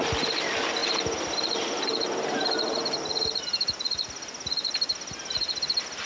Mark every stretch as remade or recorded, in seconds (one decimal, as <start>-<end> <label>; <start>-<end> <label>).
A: 0.0-6.1 recorded